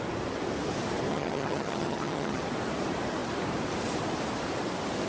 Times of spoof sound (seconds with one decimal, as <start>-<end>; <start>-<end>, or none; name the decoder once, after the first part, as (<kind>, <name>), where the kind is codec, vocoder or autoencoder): 1.1-2.4 (vocoder, HiFi-GAN)